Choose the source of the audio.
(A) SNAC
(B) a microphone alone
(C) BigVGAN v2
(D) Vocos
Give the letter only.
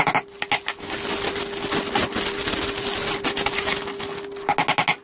B